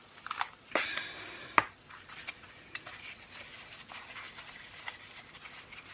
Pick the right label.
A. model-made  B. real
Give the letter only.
B